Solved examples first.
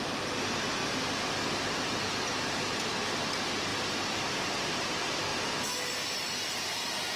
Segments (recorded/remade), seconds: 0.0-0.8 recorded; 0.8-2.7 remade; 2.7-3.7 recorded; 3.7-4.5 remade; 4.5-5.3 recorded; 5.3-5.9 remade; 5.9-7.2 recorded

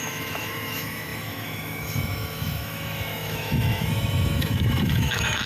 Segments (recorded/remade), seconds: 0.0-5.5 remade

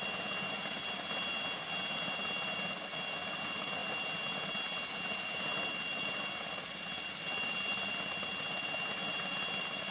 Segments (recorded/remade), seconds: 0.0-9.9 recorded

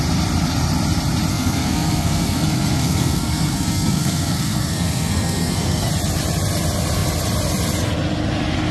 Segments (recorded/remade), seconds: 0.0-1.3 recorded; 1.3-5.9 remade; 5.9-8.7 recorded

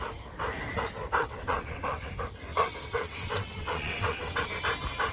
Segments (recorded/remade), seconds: 0.0-1.2 recorded; 1.2-2.1 remade; 2.1-2.5 recorded; 2.5-4.5 remade; 4.5-5.1 recorded